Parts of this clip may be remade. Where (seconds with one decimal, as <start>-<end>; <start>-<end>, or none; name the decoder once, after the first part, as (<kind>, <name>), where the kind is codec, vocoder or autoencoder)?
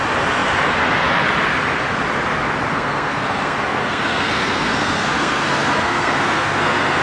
2.7-7.0 (codec, SNAC)